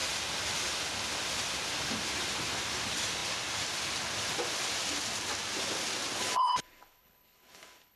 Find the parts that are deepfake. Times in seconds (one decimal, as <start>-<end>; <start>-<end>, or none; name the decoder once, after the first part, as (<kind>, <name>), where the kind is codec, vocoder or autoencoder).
6.2-8.0 (codec, HILCodec)